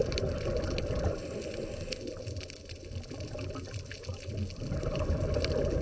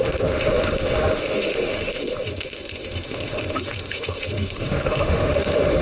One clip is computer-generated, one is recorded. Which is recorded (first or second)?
first